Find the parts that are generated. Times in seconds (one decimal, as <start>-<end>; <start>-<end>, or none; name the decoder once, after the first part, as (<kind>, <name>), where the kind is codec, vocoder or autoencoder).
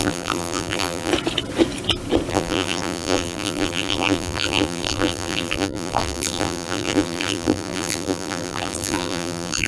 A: 0.0-1.1 (vocoder, BigVGAN v2); 2.3-9.7